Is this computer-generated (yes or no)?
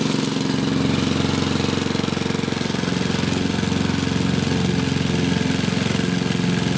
no